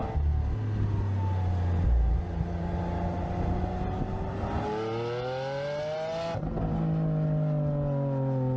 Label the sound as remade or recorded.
recorded